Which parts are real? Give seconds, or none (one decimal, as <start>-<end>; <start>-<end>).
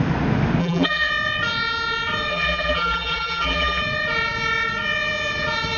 0.0-0.6; 1.1-2.3; 3.8-5.8